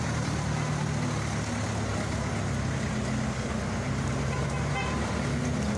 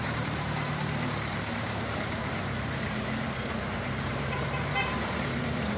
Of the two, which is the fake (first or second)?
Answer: second